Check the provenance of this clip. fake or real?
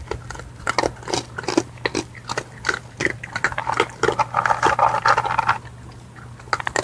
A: fake